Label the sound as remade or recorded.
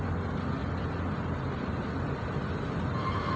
recorded